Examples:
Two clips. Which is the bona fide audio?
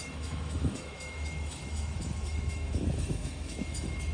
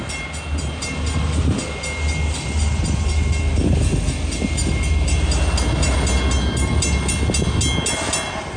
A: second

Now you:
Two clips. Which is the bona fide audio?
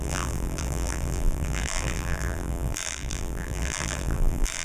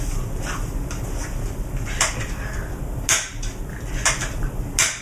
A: second